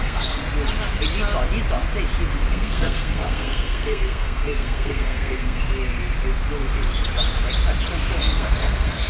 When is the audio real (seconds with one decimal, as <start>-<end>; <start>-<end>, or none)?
0.4-2.5; 5.6-8.2